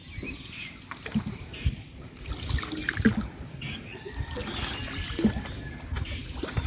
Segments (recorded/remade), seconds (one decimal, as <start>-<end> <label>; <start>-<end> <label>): 0.0-6.7 recorded